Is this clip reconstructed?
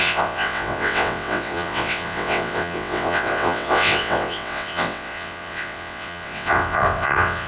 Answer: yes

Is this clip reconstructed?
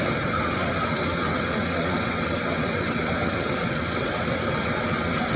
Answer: yes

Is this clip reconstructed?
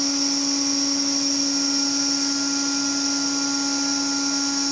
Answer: no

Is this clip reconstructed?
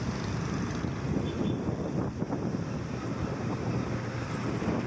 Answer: no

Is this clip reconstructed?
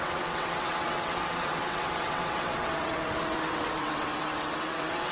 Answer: yes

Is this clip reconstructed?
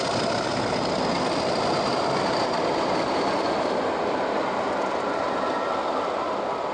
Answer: no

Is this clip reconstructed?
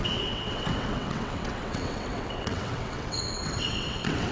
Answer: yes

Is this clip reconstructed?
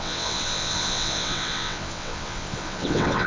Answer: yes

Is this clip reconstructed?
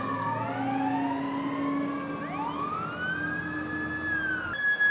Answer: no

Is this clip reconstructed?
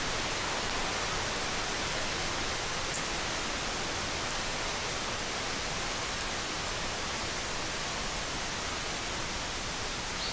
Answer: no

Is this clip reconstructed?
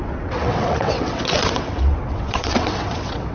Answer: yes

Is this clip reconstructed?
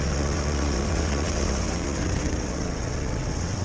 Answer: yes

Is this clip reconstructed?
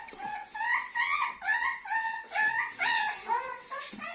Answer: yes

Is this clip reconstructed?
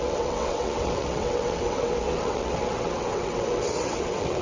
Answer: yes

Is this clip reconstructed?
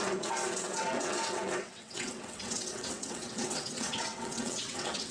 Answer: yes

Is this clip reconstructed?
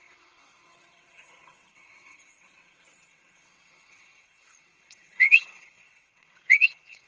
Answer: yes